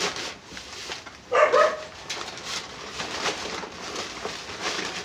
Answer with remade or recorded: recorded